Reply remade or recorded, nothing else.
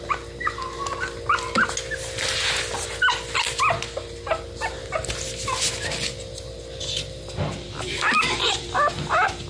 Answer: recorded